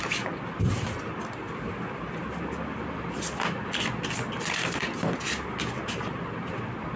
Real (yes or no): yes